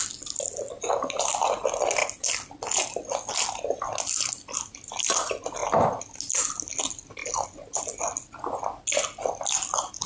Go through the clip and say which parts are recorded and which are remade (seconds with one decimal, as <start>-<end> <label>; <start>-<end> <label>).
0.0-10.1 recorded